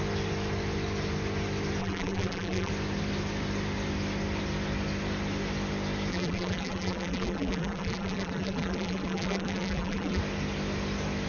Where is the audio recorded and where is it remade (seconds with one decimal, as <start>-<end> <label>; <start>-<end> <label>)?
0.0-1.8 recorded; 1.8-2.7 remade; 2.7-6.1 recorded; 6.1-10.2 remade; 10.2-11.3 recorded